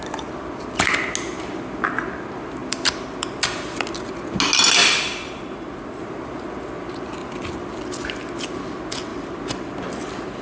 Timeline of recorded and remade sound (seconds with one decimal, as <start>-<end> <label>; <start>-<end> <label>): 0.0-2.6 recorded; 2.6-3.3 remade; 3.3-4.8 recorded; 4.8-6.0 remade; 6.0-7.2 recorded; 7.2-7.8 remade; 7.8-9.1 recorded; 9.1-10.4 remade